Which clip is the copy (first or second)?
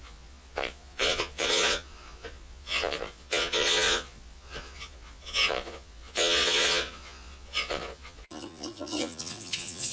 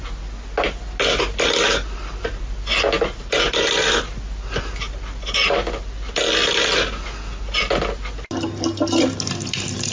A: first